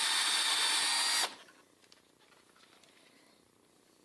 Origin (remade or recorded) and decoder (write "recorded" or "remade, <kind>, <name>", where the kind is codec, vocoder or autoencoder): recorded